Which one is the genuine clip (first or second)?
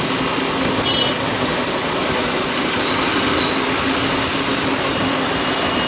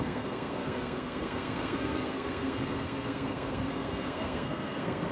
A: first